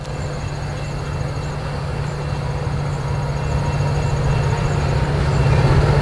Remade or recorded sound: recorded